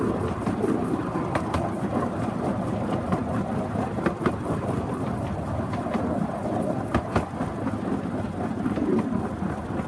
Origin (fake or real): real